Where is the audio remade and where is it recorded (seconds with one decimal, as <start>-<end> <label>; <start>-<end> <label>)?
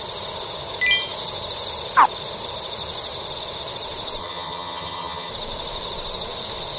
0.0-4.2 recorded; 4.2-5.3 remade; 5.3-6.8 recorded